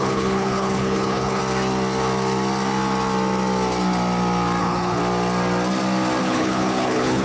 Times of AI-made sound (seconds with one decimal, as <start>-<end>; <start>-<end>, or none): 0.0-1.4; 4.6-5.0; 6.2-7.2